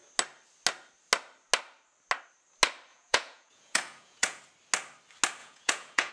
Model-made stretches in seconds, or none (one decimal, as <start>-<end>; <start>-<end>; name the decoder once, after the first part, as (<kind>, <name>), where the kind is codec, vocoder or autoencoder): 2.9-4.4 (vocoder, Vocos); 5.4-6.1